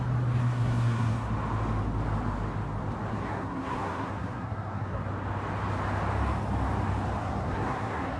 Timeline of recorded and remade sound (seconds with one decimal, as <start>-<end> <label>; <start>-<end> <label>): 0.0-0.4 recorded; 0.4-1.3 remade; 1.3-3.1 recorded; 3.1-5.0 remade; 5.0-7.2 recorded; 7.2-8.2 remade